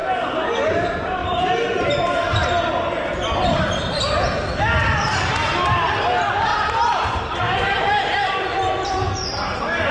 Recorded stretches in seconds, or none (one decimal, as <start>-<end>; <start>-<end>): 0.0-1.2; 2.7-3.5; 4.0-6.5; 8.5-9.9